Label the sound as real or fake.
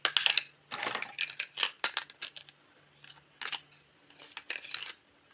real